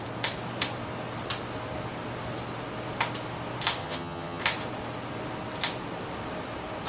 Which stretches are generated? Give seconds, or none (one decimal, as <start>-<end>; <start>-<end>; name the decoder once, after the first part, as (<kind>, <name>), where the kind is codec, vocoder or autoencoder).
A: 3.8-4.4 (vocoder, HiFi-GAN)